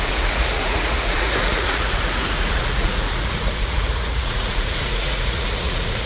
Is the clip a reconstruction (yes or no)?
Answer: yes